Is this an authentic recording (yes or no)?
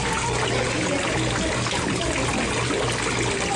yes